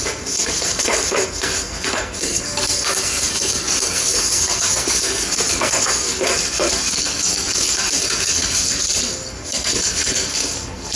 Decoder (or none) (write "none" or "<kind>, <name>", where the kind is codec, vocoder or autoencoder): codec, SNAC